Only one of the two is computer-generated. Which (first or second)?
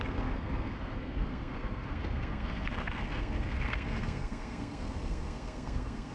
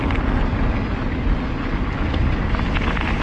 first